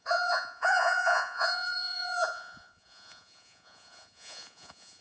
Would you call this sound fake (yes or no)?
yes